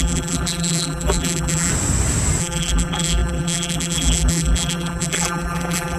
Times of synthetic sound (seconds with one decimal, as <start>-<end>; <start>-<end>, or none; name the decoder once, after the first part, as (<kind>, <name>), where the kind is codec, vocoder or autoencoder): 0.0-1.7 (vocoder, BigVGAN v2); 2.4-6.0

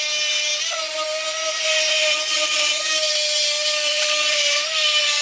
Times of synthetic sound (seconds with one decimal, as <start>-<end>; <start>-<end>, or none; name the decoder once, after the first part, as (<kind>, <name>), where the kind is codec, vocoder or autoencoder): 0.0-0.5 (vocoder, BigVGAN v2); 1.5-5.2

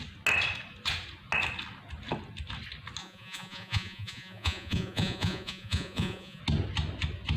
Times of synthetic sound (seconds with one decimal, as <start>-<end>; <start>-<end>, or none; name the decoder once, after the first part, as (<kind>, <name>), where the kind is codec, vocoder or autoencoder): 3.0-6.4 (vocoder, Vocos)

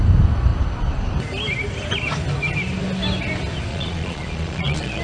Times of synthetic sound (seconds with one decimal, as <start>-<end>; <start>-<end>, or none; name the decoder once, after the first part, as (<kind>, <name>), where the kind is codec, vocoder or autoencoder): 3.7-5.0 (vocoder, Vocos)